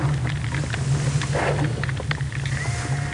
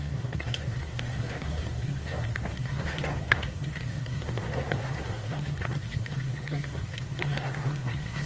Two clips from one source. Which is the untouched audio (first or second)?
first